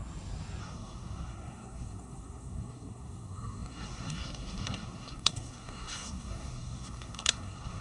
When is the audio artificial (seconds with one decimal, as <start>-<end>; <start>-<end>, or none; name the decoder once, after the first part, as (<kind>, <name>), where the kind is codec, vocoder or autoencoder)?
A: 0.6-7.8 (codec, SNAC)